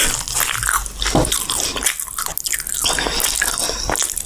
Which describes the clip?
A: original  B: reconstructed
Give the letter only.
A